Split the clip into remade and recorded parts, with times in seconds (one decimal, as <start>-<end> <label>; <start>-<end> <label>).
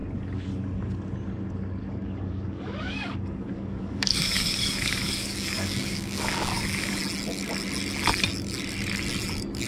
0.0-1.8 recorded; 1.8-7.0 remade; 7.0-9.7 recorded